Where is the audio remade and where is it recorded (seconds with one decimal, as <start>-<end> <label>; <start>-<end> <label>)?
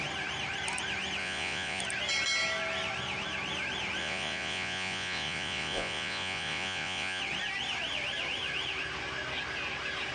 0.0-1.2 recorded; 1.2-1.8 remade; 1.8-4.0 recorded; 4.0-7.2 remade; 7.2-10.1 recorded